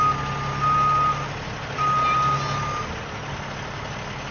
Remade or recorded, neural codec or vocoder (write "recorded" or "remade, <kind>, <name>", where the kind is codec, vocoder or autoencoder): recorded